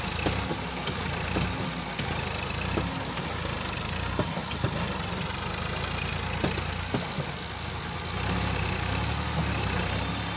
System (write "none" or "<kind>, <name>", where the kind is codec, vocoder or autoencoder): none